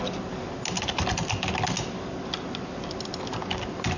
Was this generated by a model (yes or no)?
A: no